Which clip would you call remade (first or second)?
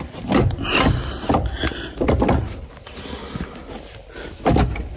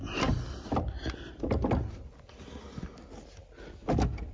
first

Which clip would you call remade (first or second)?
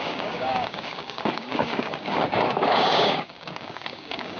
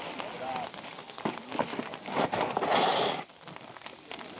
first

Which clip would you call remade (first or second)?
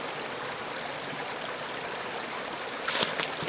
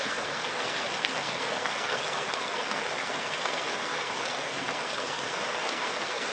second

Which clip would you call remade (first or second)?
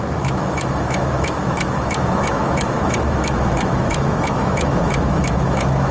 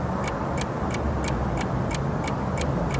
first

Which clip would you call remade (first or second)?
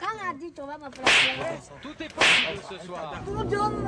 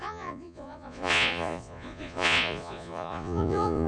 second